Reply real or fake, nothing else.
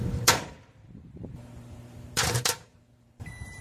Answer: fake